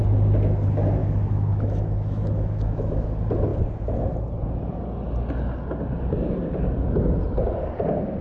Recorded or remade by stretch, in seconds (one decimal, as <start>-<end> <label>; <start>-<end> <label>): 0.0-1.0 recorded; 1.0-3.1 remade; 3.1-8.2 recorded